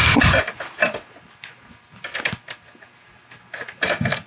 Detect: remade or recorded recorded